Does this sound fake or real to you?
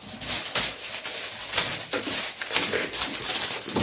real